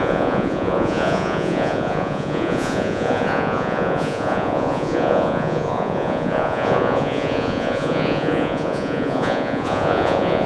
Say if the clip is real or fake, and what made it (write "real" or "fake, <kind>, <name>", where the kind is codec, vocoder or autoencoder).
fake, vocoder, Vocos